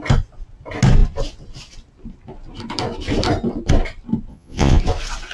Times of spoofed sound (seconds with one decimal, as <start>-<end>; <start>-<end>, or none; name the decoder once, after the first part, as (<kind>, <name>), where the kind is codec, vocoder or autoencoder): 4.3-4.8 (vocoder, Vocos)